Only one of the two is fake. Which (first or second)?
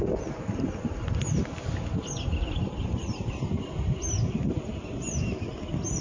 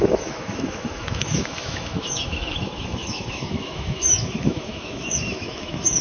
second